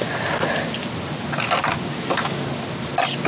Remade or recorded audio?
recorded